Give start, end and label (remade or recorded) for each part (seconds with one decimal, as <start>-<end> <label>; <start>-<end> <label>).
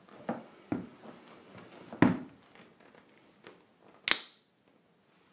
0.0-5.3 recorded